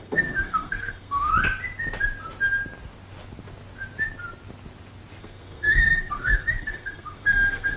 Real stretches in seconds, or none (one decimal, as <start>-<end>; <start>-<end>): 1.3-5.2